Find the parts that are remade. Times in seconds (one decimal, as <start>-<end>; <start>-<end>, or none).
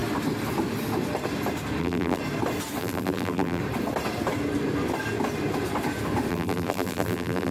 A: 1.8-2.2; 2.8-3.6; 6.3-7.5